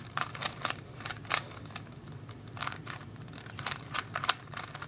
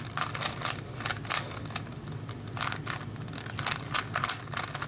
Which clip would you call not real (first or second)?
first